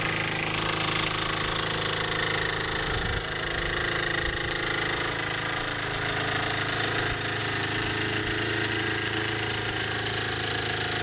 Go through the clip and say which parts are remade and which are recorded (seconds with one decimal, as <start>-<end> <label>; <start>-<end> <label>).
0.0-11.0 recorded